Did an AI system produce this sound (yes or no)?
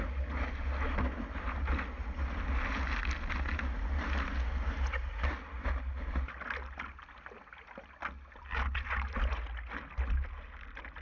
no